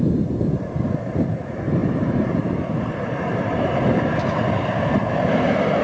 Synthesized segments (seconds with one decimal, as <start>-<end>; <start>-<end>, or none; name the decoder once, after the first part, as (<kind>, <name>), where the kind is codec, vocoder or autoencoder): 0.0-5.8 (vocoder, BigVGAN v2)